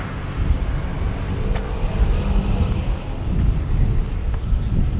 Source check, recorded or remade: recorded